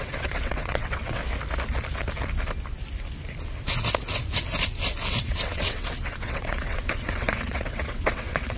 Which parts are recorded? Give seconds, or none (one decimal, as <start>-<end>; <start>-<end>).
1.2-5.2